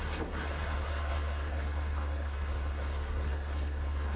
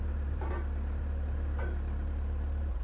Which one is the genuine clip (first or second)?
second